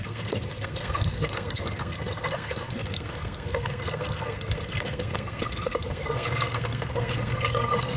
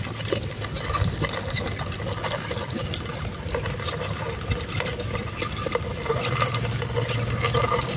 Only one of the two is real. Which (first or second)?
second